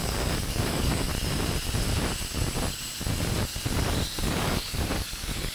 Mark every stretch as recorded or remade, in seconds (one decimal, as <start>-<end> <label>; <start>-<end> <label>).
0.0-1.1 remade; 1.1-4.4 recorded; 4.4-5.5 remade